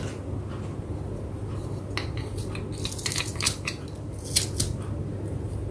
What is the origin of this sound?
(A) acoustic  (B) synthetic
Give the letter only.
A